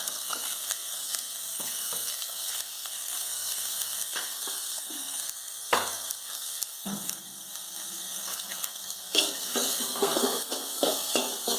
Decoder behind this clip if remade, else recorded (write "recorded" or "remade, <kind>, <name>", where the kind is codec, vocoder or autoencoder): remade, codec, SNAC